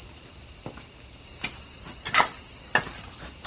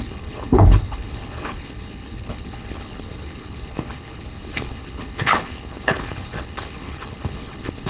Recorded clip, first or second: first